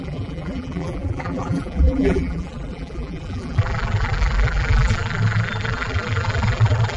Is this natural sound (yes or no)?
no